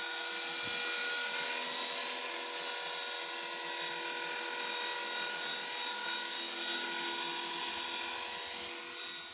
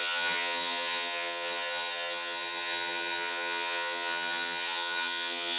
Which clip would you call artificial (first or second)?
second